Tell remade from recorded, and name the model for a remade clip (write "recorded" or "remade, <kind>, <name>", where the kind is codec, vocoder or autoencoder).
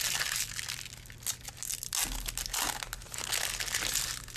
recorded